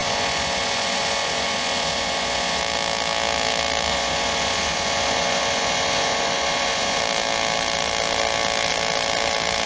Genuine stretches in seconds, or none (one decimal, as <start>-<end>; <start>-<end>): 2.6-3.9; 7.0-9.7